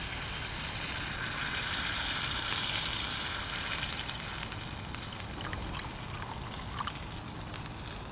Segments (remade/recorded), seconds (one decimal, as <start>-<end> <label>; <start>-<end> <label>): 0.0-8.1 recorded